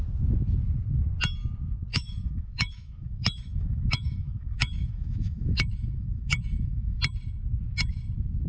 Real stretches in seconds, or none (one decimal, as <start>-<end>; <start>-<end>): 0.0-1.9; 7.0-8.5